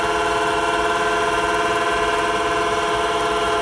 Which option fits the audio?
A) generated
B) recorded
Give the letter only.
B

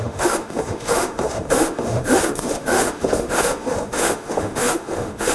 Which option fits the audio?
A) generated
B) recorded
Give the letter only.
A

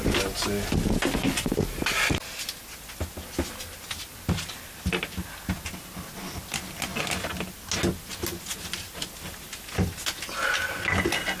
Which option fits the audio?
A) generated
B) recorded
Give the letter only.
B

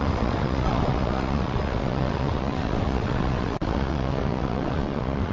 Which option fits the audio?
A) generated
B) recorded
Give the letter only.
A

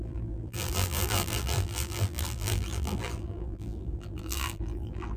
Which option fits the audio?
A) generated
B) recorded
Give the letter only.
A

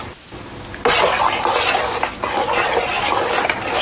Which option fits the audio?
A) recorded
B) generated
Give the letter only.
A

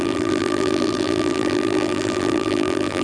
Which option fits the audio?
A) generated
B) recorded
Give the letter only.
A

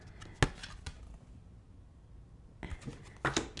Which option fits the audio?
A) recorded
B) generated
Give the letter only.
A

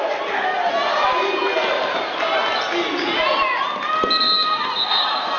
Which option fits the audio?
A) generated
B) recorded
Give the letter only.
B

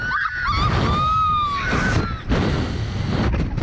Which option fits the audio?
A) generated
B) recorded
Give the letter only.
B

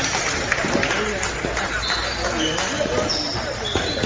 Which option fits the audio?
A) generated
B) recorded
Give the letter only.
B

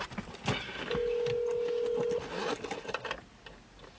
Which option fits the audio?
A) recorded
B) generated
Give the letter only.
A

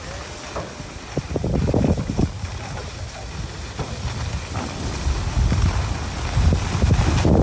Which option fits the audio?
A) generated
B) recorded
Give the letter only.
B